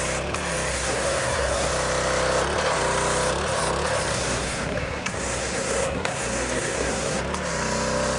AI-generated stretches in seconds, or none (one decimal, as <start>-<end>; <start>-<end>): 0.7-1.7; 4.1-7.2